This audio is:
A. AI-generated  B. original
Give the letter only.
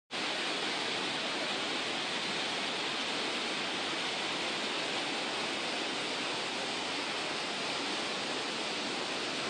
B